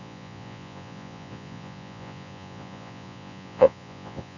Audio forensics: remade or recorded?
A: remade